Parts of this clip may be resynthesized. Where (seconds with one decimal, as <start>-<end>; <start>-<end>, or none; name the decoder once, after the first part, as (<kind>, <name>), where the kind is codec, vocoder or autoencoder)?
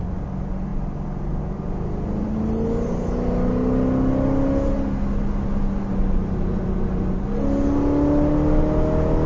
none